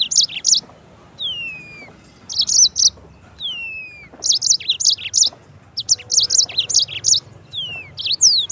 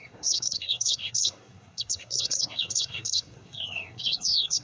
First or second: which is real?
first